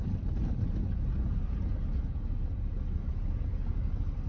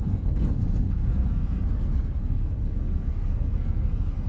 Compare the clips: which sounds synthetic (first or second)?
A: second